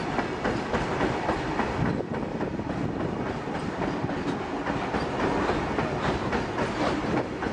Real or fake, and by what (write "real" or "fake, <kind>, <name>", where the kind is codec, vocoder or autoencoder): real